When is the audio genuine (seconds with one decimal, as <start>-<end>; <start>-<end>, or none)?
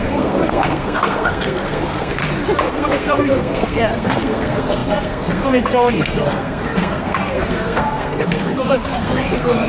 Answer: 2.2-2.7